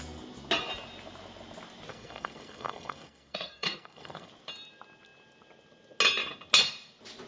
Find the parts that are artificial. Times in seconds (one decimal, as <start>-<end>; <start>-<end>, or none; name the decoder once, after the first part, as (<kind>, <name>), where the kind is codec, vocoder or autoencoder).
1.9-4.3 (codec, SNAC)